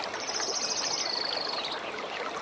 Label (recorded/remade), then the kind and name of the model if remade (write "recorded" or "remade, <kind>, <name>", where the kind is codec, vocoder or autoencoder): recorded